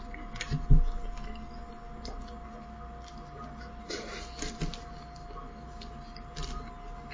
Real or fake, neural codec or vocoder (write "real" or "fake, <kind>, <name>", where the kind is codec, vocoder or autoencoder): real